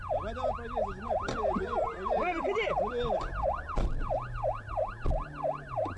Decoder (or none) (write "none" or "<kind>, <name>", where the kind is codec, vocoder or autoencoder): none